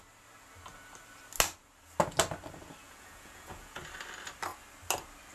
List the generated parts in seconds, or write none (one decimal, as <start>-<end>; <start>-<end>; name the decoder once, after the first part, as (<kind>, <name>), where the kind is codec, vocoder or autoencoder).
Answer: 2.8-3.8 (vocoder, Vocos)